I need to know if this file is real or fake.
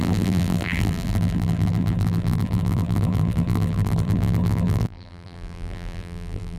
fake